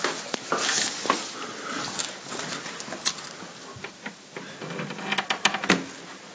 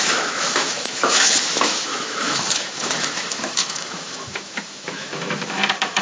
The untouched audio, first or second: first